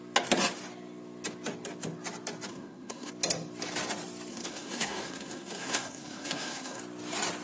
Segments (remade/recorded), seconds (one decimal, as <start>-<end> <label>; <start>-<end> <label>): 0.0-2.5 recorded; 2.5-3.1 remade; 3.1-4.3 recorded; 4.3-6.8 remade; 6.8-7.4 recorded